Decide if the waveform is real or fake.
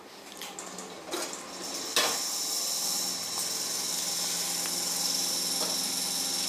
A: real